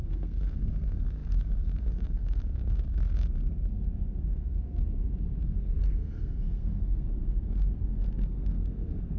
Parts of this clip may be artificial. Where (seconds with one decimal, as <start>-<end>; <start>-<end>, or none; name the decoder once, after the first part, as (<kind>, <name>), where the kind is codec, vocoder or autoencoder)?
0.0-4.8 (codec, SNAC); 5.4-9.2